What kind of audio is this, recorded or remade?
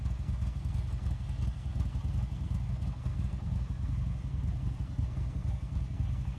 remade